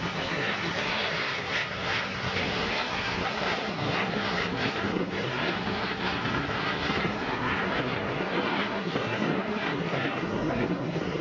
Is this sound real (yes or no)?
no